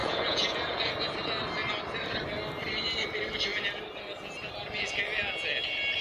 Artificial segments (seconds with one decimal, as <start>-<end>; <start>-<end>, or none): 0.0-0.9